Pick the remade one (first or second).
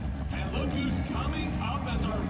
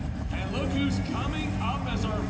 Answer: first